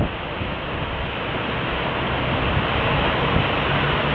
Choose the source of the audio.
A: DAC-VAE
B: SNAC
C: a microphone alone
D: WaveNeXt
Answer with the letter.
C